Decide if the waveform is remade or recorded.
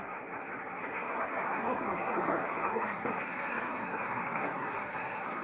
remade